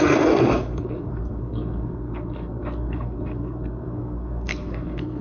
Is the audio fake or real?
fake